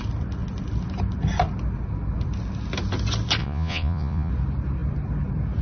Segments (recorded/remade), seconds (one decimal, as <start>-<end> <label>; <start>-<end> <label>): 0.0-3.4 recorded; 3.4-4.3 remade; 4.3-5.6 recorded